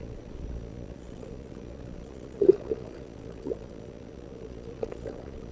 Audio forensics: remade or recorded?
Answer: remade